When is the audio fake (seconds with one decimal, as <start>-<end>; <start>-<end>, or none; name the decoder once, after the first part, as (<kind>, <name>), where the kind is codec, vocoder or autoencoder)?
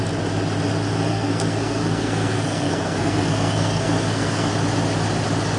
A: 1.1-4.5 (codec, SNAC)